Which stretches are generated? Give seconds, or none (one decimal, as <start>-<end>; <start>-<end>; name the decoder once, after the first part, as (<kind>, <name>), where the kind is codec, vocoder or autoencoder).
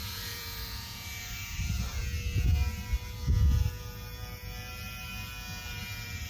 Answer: 0.0-1.2 (vocoder, Vocos)